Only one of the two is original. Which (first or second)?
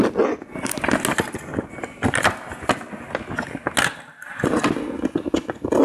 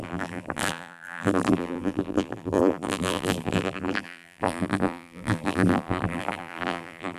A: first